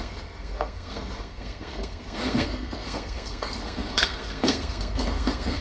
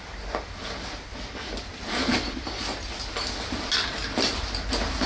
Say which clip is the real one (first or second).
second